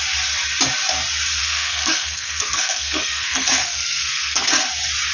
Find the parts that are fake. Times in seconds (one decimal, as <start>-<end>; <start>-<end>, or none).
1.4-4.5